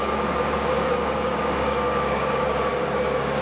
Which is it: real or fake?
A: fake